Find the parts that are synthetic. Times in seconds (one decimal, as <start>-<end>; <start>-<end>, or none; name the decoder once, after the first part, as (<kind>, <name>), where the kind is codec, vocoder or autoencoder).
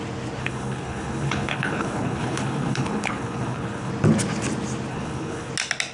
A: 0.4-3.9 (codec, HILCodec); 4.9-5.5